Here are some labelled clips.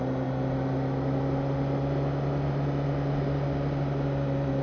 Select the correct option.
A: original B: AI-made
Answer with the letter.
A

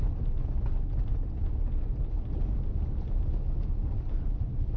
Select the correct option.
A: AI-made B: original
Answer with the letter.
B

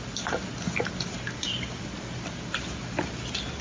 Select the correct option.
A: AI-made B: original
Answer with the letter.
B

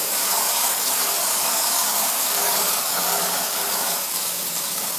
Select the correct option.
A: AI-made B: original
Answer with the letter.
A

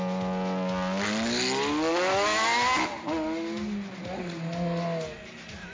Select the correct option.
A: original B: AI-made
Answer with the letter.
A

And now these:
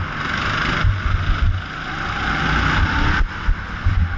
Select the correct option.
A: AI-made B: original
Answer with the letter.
B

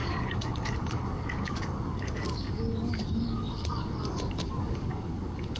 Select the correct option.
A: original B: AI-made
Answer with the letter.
B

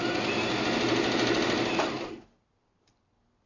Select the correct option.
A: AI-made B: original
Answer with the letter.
B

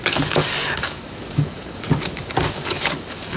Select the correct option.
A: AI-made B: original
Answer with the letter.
A